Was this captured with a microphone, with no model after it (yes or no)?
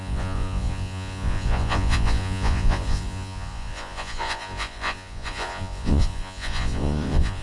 no